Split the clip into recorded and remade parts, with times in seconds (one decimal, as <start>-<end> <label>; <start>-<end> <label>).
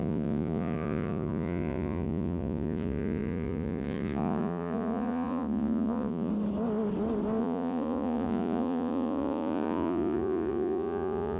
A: 0.0-6.3 remade; 6.3-7.4 recorded; 7.4-11.4 remade